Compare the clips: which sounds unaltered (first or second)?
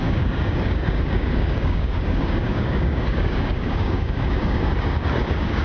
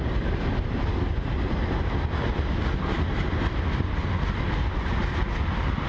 second